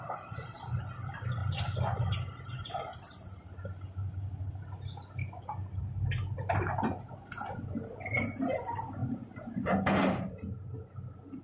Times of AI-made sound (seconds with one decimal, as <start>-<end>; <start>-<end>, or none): none